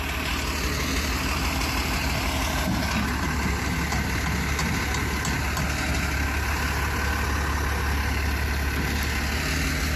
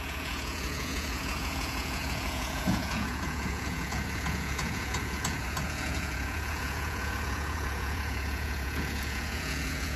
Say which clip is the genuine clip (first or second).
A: first